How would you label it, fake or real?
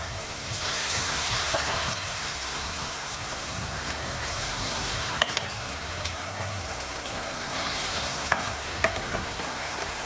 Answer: fake